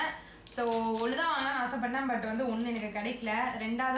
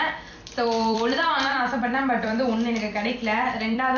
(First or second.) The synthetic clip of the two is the second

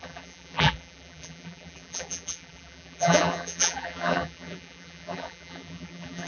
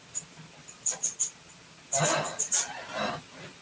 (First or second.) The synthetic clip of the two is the first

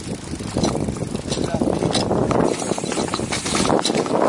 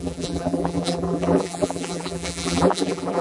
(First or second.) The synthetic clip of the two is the second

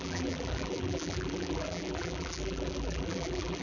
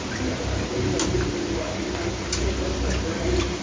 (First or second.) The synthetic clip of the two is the first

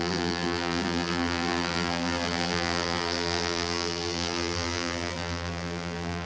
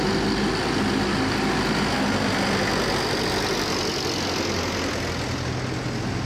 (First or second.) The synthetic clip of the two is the first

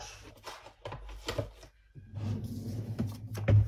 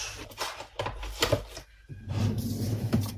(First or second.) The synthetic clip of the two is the second